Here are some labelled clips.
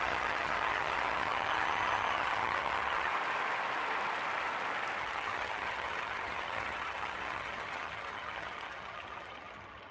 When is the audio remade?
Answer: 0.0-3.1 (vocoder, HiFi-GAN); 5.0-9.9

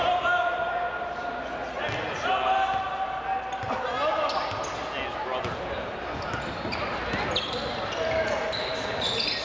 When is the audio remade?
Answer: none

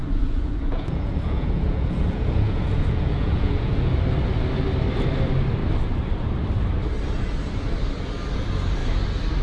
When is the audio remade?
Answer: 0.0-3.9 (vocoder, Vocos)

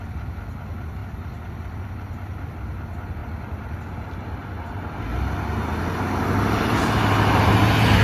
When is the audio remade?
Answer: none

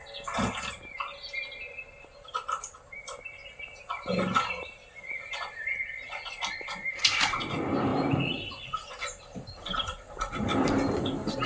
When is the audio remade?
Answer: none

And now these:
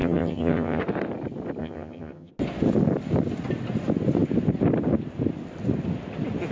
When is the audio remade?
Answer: 0.0-0.8 (vocoder, HiFi-GAN); 1.6-2.3

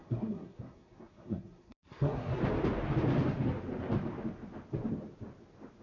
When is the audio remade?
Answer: 0.0-2.4 (codec, SNAC)

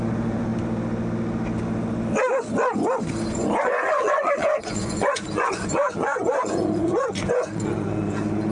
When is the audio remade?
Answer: 0.0-0.5 (vocoder, Vocos); 3.4-8.5